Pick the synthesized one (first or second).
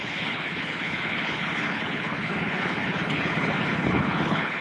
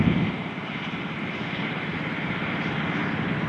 first